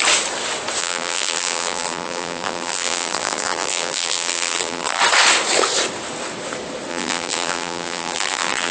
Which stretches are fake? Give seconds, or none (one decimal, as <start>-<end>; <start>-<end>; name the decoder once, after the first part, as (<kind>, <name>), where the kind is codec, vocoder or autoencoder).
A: 0.8-5.0 (vocoder, BigVGAN v2); 6.9-8.7